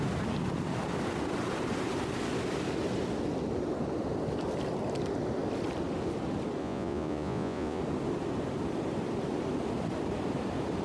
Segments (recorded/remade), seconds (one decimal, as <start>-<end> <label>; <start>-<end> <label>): 0.0-6.6 recorded; 6.6-7.8 remade; 7.8-10.8 recorded